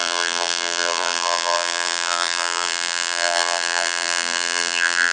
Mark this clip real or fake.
fake